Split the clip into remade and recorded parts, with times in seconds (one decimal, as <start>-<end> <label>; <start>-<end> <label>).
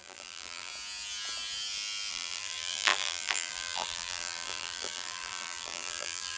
0.0-0.7 remade; 0.7-2.1 recorded; 2.1-6.4 remade